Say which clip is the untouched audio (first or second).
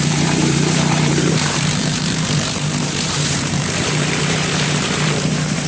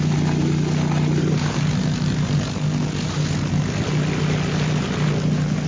second